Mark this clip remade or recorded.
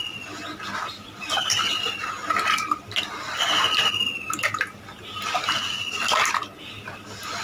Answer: recorded